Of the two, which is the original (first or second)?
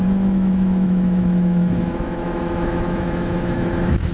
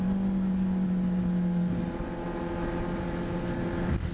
second